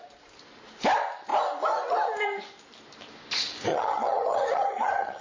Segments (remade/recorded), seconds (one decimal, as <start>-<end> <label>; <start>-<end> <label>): 0.0-3.7 recorded; 3.7-5.2 remade